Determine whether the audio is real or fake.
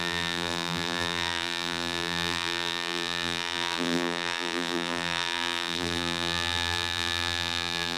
fake